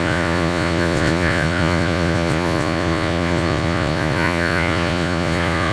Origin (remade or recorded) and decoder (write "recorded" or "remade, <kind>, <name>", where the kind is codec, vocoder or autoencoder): remade, vocoder, Vocos